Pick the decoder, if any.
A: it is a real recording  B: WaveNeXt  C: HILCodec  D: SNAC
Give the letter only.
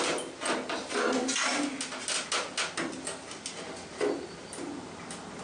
A